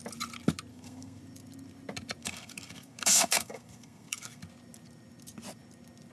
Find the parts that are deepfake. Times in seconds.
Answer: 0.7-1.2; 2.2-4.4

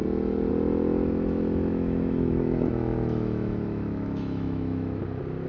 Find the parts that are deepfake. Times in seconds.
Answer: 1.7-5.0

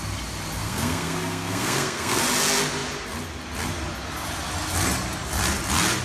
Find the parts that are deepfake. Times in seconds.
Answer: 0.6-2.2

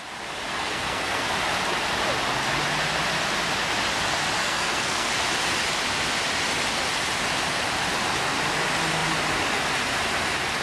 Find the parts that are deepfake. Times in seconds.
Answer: 0.5-1.3; 4.4-5.1